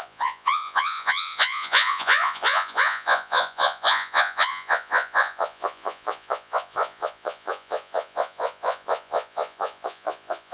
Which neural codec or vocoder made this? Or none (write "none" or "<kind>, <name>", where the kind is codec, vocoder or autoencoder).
vocoder, Vocos